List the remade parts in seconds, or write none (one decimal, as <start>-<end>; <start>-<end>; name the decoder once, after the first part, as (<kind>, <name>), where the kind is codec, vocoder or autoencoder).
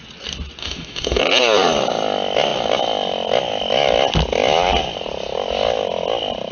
0.6-1.2 (autoencoder, DAC-VAE)